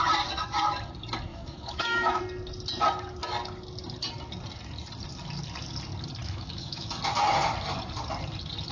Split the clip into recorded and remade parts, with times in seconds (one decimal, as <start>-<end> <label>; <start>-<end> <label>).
0.0-1.3 recorded; 1.3-2.2 remade; 2.2-6.2 recorded; 6.2-6.9 remade; 6.9-8.7 recorded